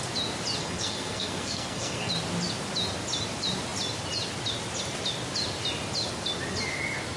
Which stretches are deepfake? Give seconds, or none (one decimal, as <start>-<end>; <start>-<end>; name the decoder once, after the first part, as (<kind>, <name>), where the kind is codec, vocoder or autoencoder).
0.6-2.1 (codec, SNAC)